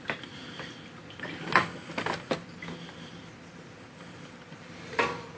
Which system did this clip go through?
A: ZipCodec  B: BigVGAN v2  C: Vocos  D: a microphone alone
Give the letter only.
D